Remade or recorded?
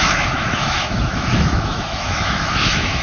remade